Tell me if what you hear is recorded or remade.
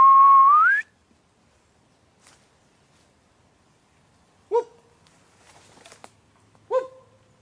recorded